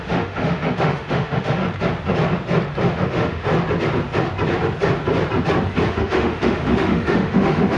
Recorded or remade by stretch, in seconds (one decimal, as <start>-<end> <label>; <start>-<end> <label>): 0.0-1.6 remade; 1.6-2.9 recorded; 2.9-3.5 remade; 3.5-5.9 recorded; 5.9-7.8 remade